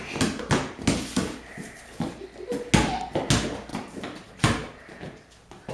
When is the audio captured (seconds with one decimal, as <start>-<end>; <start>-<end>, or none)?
0.0-3.7; 4.3-5.7